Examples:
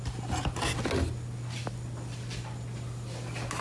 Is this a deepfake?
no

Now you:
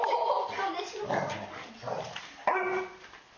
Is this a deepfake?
no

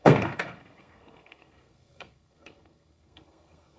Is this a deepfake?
yes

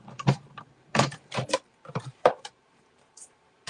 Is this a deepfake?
yes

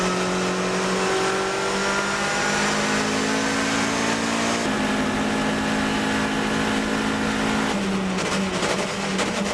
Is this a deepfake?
no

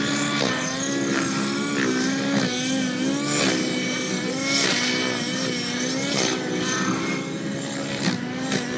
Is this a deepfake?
no